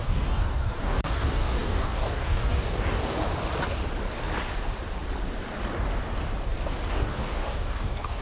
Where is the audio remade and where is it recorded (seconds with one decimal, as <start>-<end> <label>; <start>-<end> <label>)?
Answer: 0.0-3.2 remade; 3.2-6.9 recorded; 6.9-8.2 remade